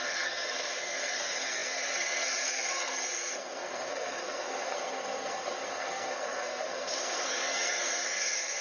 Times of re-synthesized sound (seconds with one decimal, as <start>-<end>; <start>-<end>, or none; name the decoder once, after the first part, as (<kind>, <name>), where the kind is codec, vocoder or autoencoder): 0.0-8.6 (codec, SNAC)